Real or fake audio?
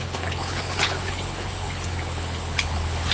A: fake